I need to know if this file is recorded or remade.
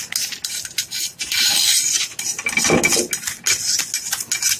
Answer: recorded